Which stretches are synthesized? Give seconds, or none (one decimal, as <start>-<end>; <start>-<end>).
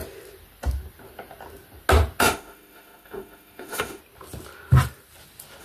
2.2-4.0